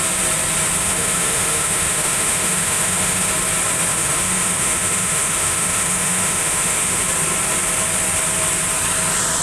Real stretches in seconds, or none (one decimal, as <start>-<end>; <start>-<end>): 0.0-0.8; 3.3-3.9; 7.0-9.4